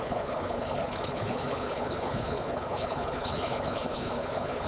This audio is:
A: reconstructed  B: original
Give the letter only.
A